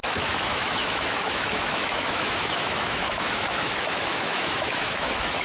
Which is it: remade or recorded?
remade